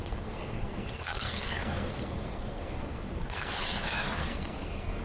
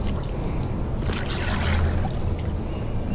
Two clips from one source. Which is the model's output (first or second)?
first